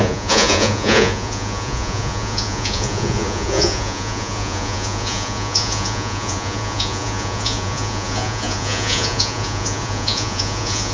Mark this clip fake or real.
fake